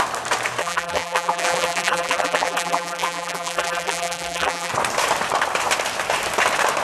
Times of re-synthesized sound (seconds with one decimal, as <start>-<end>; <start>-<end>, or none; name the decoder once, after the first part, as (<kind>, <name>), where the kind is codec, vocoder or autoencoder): 0.6-4.7 (vocoder, BigVGAN v2)